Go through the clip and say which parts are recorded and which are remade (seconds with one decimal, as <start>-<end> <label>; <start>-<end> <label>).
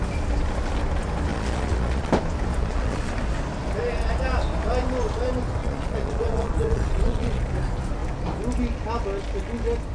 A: 0.0-1.3 recorded; 1.3-2.1 remade; 2.1-2.6 recorded; 2.6-3.1 remade; 3.1-5.6 recorded; 5.6-7.4 remade; 7.4-9.9 recorded